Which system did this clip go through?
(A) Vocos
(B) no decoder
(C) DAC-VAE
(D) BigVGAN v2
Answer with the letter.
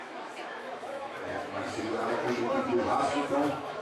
C